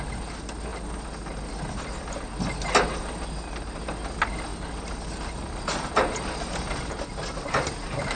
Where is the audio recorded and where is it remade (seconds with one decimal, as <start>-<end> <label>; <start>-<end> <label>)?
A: 0.0-8.2 recorded